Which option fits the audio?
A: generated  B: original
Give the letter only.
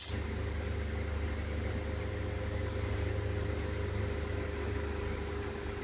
B